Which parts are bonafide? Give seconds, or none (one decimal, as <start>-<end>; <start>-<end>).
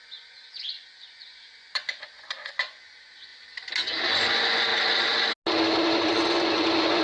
3.3-4.1; 4.7-5.8